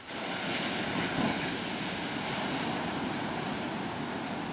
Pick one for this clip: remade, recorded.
recorded